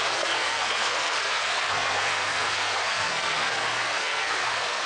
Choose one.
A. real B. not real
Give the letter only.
B